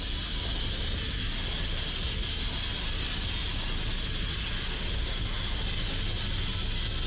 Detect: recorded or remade recorded